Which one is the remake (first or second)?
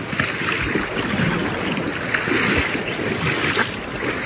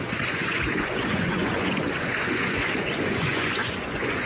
second